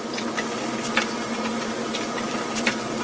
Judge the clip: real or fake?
real